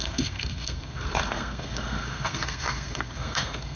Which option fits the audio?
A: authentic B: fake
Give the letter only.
B